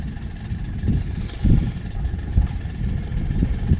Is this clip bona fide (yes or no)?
yes